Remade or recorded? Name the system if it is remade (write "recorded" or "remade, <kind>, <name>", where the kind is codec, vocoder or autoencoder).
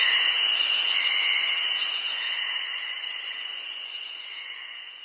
remade, vocoder, Vocos